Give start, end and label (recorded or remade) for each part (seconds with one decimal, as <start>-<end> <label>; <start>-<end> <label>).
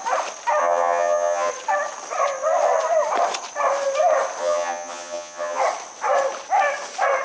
0.0-0.6 recorded; 0.6-1.5 remade; 1.5-4.4 recorded; 4.4-5.6 remade; 5.6-7.2 recorded